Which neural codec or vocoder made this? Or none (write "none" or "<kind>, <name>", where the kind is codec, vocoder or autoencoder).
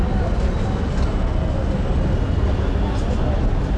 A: none